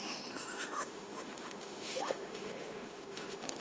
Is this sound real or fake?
fake